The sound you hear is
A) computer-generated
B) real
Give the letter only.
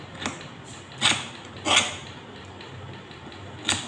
B